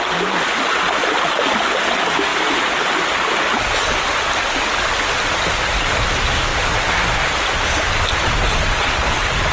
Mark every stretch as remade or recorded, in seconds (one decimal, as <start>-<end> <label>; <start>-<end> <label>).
0.0-9.5 recorded

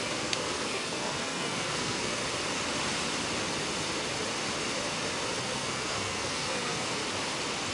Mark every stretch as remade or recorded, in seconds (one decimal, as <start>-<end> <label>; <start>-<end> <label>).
0.0-2.2 remade; 2.2-5.4 recorded; 5.4-7.0 remade; 7.0-7.7 recorded

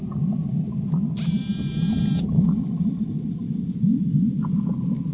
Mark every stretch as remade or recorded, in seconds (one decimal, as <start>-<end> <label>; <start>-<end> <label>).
0.0-5.1 recorded

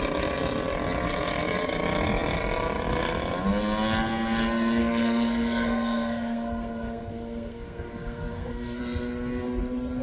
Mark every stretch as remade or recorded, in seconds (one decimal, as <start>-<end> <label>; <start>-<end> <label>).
0.0-4.8 recorded; 4.8-8.8 remade; 8.8-10.0 recorded

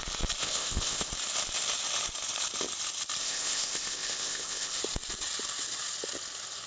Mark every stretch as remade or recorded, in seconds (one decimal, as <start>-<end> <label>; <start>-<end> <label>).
0.0-0.4 recorded; 0.4-1.1 remade; 1.1-3.2 recorded; 3.2-4.8 remade; 4.8-6.7 recorded

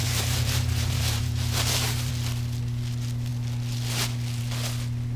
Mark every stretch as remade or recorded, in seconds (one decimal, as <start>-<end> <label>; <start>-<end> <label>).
0.0-2.1 remade; 2.1-5.2 recorded